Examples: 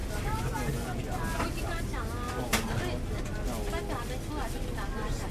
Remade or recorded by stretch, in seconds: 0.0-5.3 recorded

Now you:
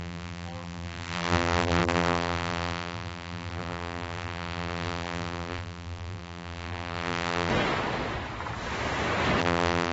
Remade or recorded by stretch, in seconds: 0.0-7.5 remade; 7.5-9.4 recorded; 9.4-9.9 remade

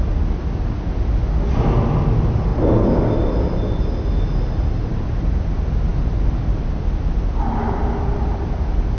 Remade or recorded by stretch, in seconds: 0.0-9.0 recorded